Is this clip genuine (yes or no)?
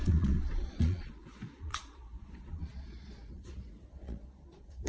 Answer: no